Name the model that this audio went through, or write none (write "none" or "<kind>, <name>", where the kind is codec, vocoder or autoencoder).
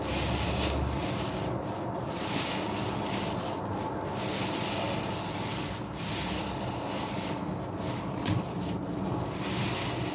none